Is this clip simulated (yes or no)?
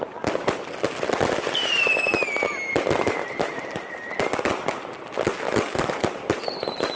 no